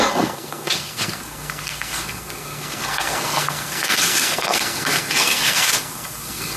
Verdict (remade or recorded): remade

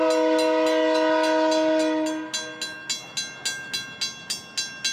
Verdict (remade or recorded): recorded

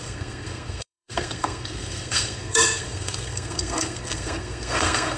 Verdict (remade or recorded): remade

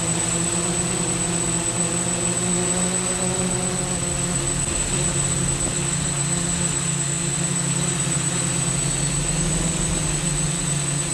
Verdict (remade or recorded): recorded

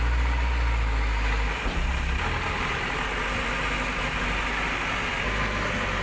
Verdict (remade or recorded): recorded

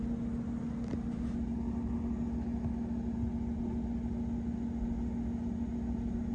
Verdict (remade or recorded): recorded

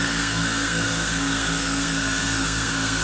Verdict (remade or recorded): remade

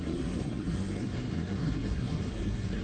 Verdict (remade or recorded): remade